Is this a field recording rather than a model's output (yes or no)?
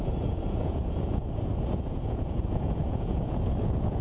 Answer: no